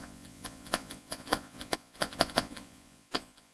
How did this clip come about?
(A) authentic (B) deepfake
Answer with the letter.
B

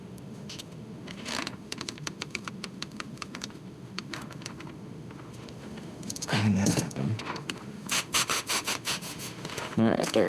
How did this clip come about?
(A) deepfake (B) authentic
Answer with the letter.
A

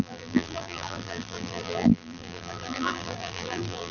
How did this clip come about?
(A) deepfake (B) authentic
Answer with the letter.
A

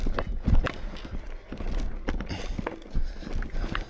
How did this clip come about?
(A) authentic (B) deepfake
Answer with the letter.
A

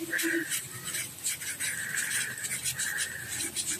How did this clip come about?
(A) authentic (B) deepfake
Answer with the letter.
B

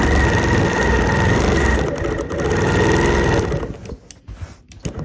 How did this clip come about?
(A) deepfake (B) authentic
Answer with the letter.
B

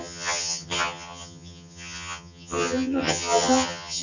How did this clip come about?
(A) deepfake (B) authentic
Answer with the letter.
A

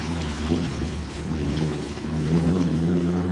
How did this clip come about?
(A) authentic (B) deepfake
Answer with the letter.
B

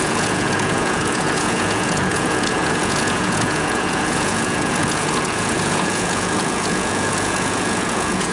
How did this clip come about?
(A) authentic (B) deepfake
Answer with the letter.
B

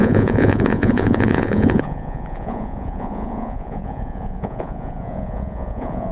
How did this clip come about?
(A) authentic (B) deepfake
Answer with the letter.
B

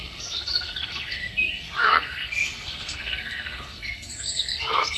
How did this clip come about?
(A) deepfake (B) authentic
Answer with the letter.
A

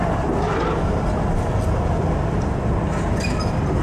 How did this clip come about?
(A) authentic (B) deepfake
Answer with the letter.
B